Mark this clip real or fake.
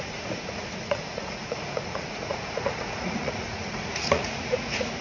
fake